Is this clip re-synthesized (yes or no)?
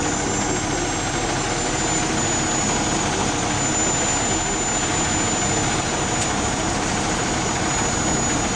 no